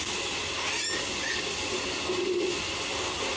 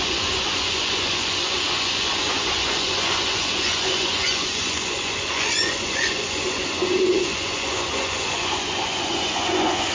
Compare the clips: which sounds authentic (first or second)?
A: first